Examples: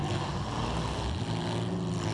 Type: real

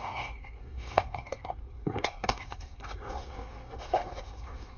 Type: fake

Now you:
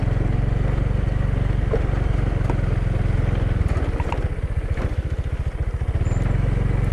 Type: real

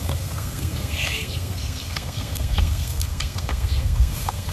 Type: fake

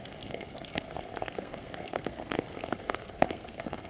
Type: fake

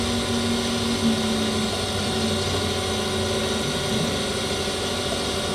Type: real